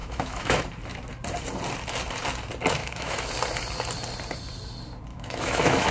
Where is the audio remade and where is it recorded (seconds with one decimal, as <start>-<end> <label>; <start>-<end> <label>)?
0.0-0.6 remade; 0.6-2.8 recorded; 2.8-3.3 remade; 3.3-5.1 recorded; 5.1-5.9 remade